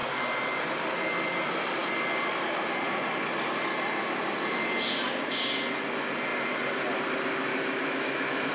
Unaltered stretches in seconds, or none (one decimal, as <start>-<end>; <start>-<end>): 0.0-7.5